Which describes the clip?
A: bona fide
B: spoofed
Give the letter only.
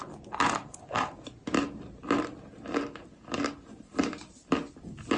A